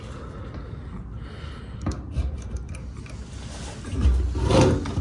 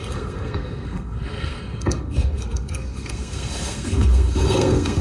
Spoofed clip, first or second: second